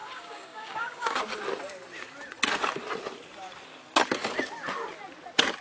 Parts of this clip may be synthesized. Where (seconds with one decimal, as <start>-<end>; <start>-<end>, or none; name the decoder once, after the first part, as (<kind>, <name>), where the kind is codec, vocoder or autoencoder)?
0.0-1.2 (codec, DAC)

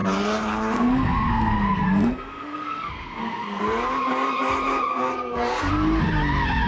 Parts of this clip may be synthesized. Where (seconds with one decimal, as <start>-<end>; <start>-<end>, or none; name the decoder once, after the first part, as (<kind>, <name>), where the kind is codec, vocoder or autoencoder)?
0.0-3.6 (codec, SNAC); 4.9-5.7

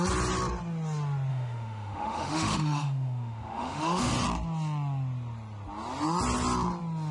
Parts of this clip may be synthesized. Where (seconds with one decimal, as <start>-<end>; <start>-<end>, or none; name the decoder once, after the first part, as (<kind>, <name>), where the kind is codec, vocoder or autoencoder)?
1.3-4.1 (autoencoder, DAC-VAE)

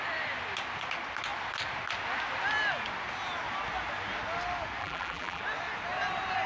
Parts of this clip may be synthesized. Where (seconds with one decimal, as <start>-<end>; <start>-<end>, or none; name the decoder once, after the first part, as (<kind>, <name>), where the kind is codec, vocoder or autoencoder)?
4.8-5.4 (vocoder, BigVGAN v2)